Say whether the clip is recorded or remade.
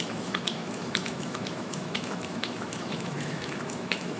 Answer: remade